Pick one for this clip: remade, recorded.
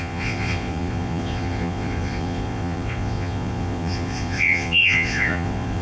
remade